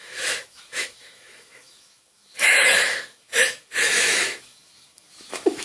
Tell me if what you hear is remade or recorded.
remade